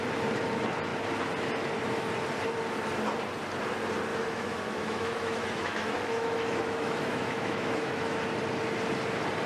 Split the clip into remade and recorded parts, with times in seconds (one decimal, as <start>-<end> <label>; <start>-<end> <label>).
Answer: 0.0-4.1 recorded; 4.1-8.2 remade; 8.2-9.5 recorded